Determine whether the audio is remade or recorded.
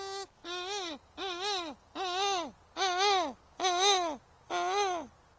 recorded